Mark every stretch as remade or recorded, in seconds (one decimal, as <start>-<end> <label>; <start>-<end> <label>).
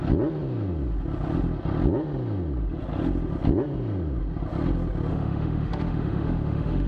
0.0-5.1 recorded; 5.1-6.9 remade